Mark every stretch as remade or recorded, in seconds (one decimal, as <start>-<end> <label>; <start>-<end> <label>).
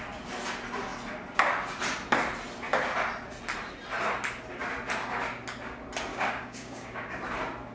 0.0-6.1 recorded; 6.1-7.0 remade; 7.0-7.7 recorded